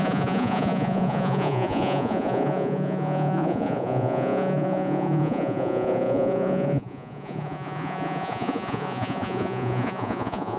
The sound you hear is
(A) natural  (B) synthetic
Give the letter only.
B